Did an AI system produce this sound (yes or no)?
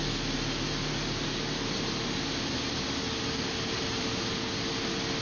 no